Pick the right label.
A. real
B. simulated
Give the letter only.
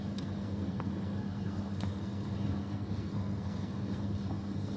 B